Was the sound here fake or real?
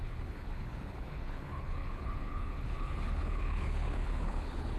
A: fake